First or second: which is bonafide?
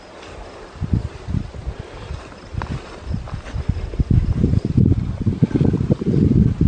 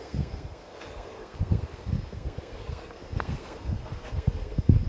first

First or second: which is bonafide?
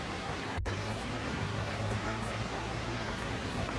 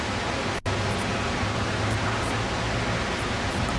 second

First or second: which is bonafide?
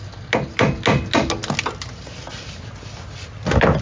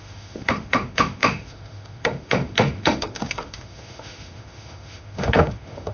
first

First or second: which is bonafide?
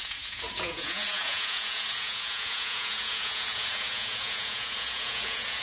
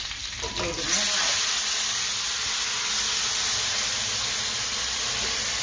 second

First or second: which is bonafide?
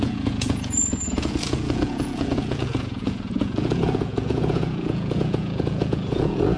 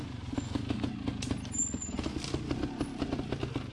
second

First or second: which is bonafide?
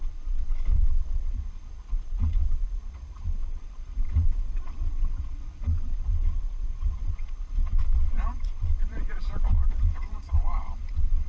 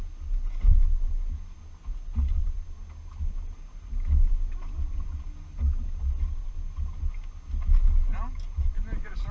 second